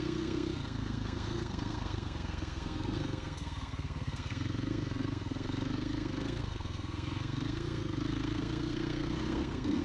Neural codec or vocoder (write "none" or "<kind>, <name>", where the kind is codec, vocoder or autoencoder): codec, SNAC